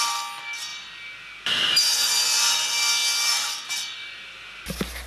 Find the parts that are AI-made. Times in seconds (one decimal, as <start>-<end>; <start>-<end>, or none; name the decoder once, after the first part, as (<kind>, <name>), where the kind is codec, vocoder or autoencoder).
none